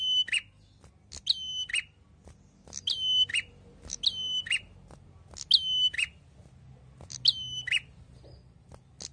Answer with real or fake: real